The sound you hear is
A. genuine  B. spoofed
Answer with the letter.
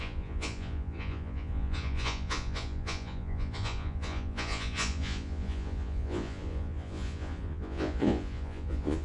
B